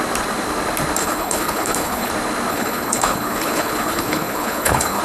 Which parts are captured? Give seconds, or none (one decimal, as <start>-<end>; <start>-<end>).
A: 0.0-1.0; 2.1-2.5